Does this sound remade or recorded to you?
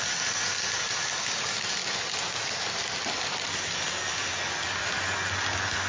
recorded